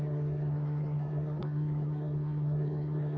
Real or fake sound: fake